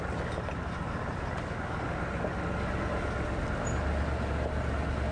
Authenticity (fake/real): real